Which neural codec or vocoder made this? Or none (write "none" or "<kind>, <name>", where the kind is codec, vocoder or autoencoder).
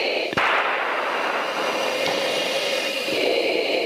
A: none